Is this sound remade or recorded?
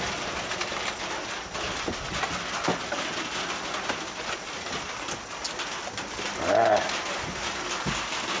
recorded